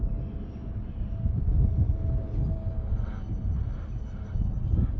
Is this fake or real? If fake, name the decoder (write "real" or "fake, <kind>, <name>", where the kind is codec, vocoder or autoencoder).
real